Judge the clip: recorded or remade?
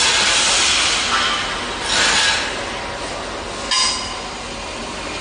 recorded